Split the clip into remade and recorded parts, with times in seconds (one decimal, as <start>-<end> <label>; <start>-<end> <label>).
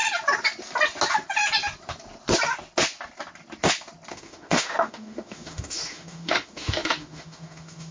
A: 0.0-4.1 recorded; 4.1-7.9 remade